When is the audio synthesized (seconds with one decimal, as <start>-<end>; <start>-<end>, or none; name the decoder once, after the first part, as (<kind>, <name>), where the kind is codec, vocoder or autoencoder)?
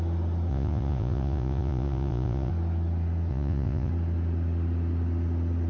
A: 0.5-2.5 (vocoder, Vocos); 3.3-3.9